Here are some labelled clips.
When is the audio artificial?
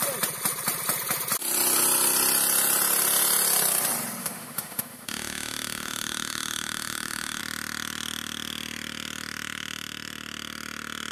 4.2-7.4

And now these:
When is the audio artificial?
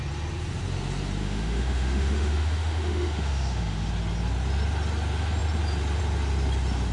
1.2-3.9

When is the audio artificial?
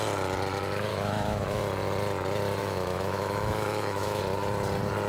0.9-1.6; 2.6-4.2